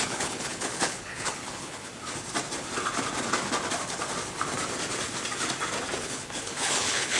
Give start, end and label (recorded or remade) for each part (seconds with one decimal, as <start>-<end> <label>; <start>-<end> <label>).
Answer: 0.0-1.9 remade; 1.9-6.0 recorded; 6.0-7.2 remade